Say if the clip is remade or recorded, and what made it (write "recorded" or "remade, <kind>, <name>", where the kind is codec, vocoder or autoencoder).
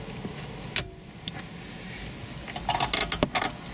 recorded